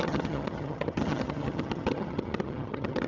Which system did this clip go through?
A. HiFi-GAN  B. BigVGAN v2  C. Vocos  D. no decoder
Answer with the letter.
A